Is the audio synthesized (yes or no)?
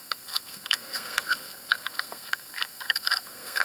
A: yes